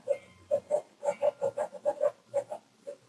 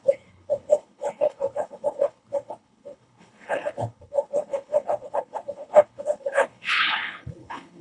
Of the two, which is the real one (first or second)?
first